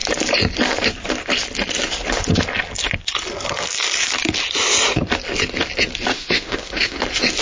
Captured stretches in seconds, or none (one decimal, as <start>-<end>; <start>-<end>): 0.0-6.1; 7.0-7.4